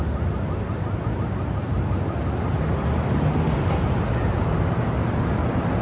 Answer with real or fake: real